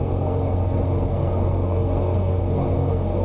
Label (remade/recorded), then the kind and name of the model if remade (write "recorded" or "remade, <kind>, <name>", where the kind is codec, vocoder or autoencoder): remade, codec, SNAC